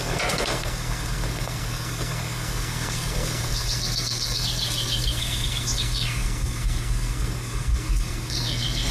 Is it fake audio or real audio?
fake